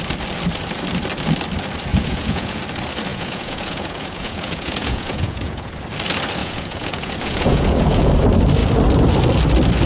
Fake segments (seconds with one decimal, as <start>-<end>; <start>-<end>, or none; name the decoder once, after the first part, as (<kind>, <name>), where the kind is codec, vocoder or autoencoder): 1.9-2.6 (vocoder, Vocos); 3.1-5.7; 6.4-8.1